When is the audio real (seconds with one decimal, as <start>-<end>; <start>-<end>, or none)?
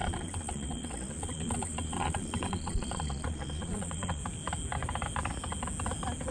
4.2-6.3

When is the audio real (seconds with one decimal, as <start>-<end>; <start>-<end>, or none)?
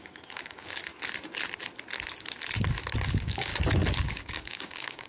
0.8-3.1; 3.5-4.1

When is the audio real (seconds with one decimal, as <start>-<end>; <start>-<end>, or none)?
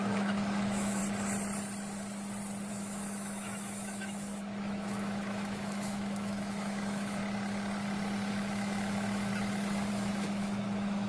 1.0-2.7; 7.2-8.3; 9.3-9.9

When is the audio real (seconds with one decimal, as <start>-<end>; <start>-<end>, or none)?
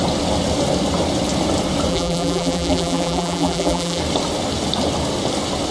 0.0-1.9; 4.0-5.7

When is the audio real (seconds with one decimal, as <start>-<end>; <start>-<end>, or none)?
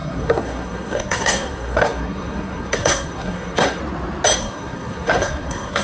3.8-4.4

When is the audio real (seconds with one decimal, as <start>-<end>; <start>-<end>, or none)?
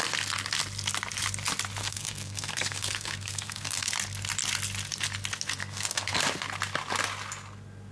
0.0-1.8; 3.9-5.6; 6.2-7.9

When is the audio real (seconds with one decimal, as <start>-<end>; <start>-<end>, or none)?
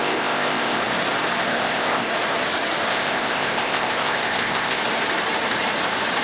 0.8-1.5; 2.1-2.9; 4.8-6.2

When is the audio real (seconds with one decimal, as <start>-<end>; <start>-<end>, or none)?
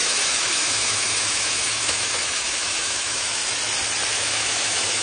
3.4-4.1